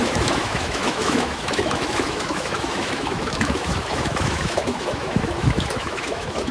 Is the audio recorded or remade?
remade